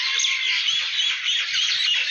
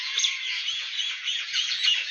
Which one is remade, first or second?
second